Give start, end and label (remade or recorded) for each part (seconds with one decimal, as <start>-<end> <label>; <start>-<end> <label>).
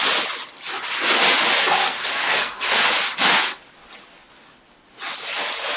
0.0-1.8 recorded; 1.8-2.8 remade; 2.8-5.8 recorded